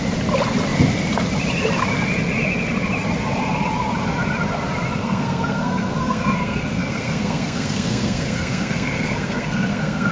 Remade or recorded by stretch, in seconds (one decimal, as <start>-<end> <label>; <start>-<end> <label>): 0.0-5.0 recorded; 5.0-10.1 remade